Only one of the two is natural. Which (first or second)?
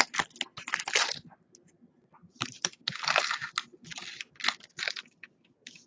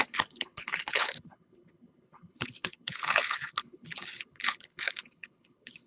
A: first